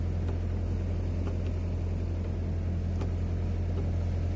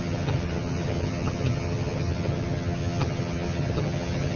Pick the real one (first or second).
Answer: first